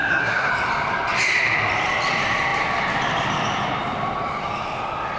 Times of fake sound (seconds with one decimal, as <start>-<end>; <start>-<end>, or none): 0.0-0.5